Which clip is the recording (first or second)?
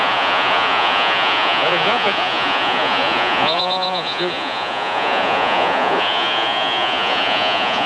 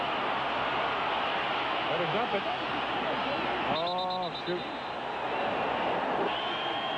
second